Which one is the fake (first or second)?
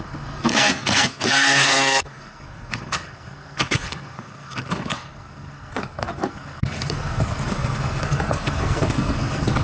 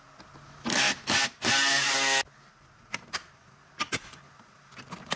first